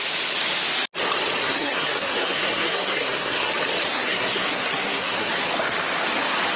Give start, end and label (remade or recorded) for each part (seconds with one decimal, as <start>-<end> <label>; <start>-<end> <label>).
0.0-1.4 recorded; 1.4-3.5 remade; 3.5-3.9 recorded; 3.9-5.3 remade; 5.3-6.6 recorded